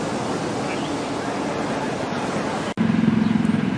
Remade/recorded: recorded